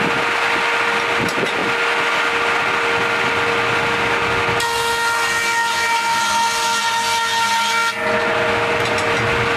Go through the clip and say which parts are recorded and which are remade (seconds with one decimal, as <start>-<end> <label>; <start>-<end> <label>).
0.0-9.6 recorded